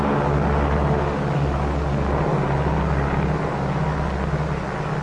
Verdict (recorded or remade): recorded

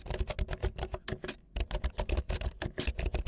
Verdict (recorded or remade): recorded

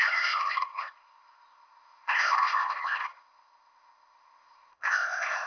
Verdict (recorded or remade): remade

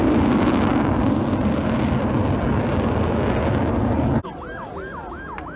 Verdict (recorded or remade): recorded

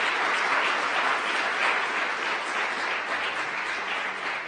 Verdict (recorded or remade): recorded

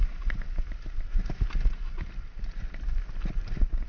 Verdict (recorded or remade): recorded